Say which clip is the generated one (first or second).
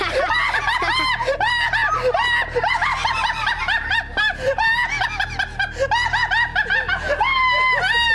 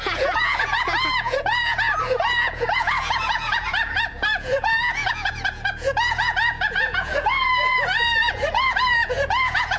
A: second